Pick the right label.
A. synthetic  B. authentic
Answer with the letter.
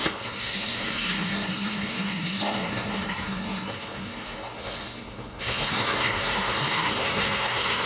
A